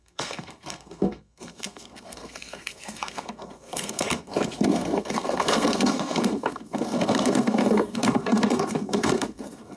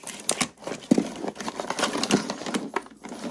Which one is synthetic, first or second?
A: first